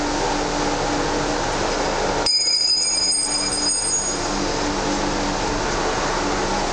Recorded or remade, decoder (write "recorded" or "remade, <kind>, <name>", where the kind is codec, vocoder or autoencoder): recorded